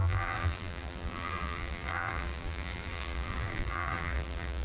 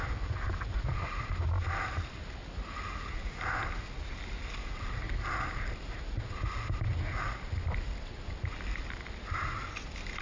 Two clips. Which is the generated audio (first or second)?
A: first